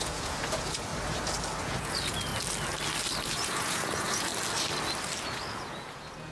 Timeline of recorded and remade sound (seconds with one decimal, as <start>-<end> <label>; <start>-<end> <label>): 0.0-0.9 remade; 0.9-1.6 recorded; 1.6-2.3 remade; 2.3-3.3 recorded; 3.3-4.3 remade; 4.3-5.2 recorded; 5.2-6.3 remade